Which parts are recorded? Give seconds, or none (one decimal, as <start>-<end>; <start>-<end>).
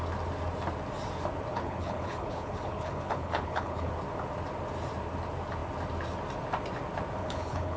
0.0-1.5; 3.9-7.2